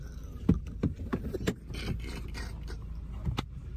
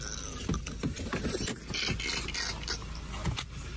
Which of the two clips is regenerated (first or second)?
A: first